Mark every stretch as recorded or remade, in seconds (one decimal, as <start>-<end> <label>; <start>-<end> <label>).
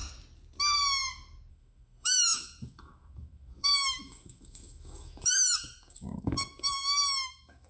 0.0-1.5 recorded; 1.5-7.7 remade